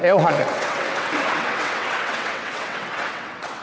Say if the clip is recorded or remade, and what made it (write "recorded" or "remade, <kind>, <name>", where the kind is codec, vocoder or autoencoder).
remade, vocoder, WaveNeXt